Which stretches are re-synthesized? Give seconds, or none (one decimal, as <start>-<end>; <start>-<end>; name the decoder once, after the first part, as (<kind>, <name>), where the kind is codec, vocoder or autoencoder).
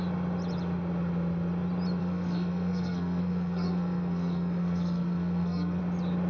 2.0-5.8 (codec, SNAC)